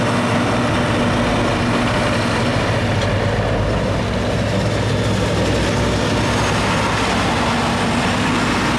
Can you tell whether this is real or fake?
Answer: real